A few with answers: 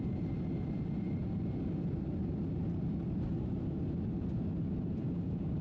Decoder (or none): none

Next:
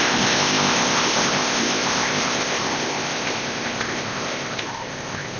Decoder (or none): codec, ZipCodec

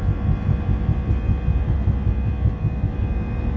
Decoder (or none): none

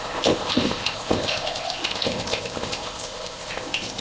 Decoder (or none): codec, ZipCodec